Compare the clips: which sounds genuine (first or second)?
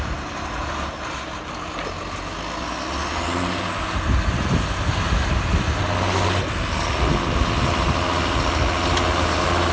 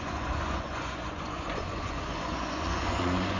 first